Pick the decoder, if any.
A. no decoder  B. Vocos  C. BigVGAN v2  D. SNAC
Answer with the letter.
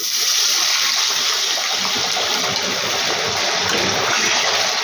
C